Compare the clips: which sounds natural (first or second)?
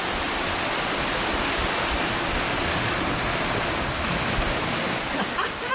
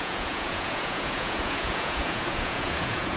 first